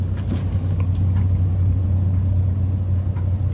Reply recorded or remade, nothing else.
recorded